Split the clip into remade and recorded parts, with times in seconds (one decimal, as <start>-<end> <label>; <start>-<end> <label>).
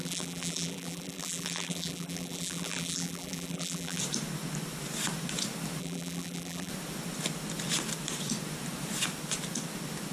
0.0-4.0 remade; 4.0-5.8 recorded; 5.8-6.7 remade; 6.7-10.1 recorded